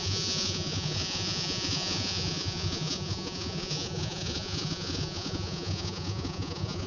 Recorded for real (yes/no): no